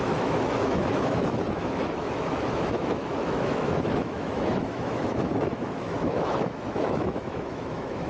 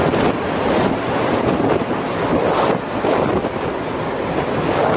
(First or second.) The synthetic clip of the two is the first